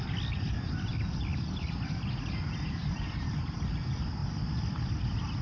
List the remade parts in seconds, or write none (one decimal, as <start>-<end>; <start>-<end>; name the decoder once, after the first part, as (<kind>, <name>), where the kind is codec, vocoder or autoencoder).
none